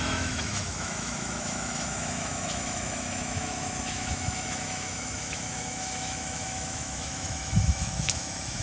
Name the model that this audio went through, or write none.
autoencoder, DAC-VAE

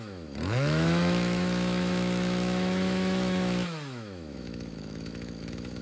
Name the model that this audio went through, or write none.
autoencoder, DAC-VAE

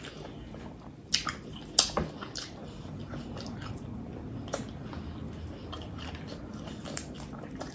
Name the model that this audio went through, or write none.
none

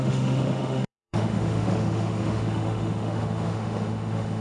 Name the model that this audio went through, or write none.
autoencoder, DAC-VAE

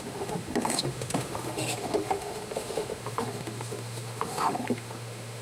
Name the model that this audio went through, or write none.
autoencoder, DAC-VAE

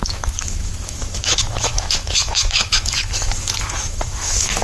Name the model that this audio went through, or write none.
autoencoder, DAC-VAE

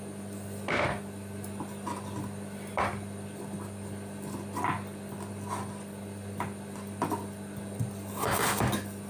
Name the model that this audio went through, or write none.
none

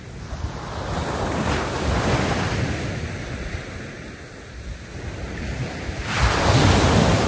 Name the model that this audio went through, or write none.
none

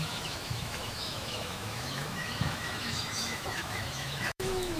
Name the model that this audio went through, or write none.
autoencoder, DAC-VAE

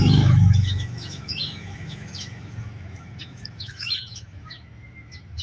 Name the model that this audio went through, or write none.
autoencoder, DAC-VAE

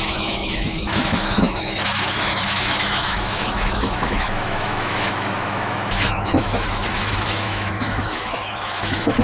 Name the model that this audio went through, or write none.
autoencoder, DAC-VAE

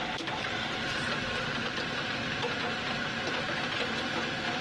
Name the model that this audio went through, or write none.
none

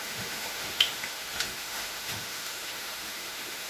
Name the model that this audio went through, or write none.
autoencoder, DAC-VAE